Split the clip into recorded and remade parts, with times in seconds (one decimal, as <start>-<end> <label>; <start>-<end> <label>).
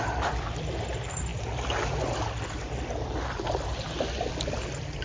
0.0-5.0 recorded